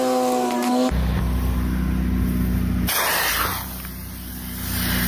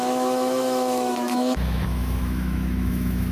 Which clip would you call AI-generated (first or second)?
second